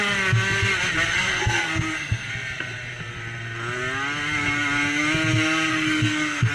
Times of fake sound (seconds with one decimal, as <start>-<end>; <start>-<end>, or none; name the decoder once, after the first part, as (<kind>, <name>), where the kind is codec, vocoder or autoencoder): 1.1-2.3 (codec, SNAC); 5.7-6.5